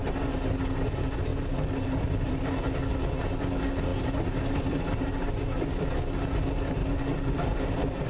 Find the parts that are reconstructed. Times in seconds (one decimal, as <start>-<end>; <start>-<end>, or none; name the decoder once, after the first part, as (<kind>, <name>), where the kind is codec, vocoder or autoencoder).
1.3-2.4 (vocoder, BigVGAN v2); 3.9-5.3; 6.8-8.1